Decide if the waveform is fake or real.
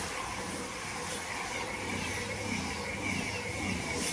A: real